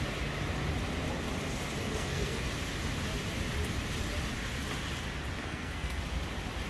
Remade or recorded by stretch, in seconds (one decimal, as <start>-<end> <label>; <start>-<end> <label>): 0.0-1.8 recorded; 1.8-2.4 remade; 2.4-5.4 recorded; 5.4-6.0 remade; 6.0-6.7 recorded